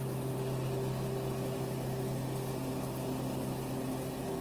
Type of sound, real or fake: real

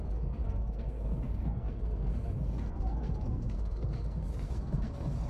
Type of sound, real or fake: fake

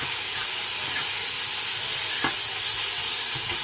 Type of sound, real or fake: real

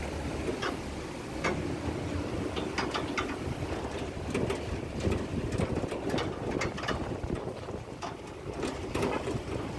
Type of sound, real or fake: real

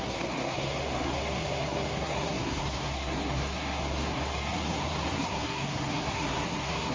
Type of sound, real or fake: fake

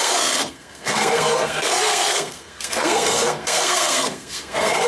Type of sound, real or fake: fake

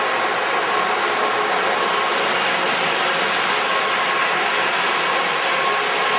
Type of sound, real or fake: real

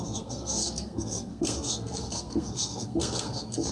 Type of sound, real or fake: fake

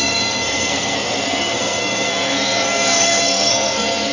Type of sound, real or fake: fake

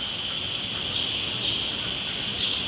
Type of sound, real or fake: real